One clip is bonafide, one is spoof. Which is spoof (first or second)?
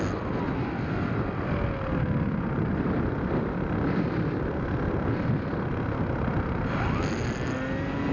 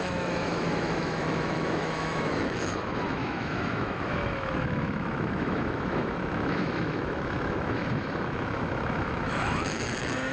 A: second